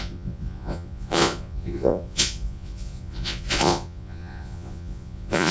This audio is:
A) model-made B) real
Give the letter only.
A